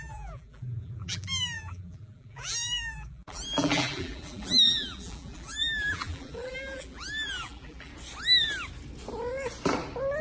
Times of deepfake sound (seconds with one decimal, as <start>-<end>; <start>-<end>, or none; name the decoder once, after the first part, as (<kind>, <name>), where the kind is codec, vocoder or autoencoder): 0.0-7.9 (vocoder, BigVGAN v2)